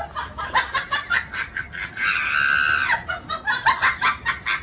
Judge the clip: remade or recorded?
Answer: recorded